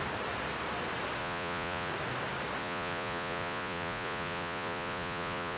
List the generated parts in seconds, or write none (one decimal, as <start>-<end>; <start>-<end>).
1.2-1.9; 2.6-5.6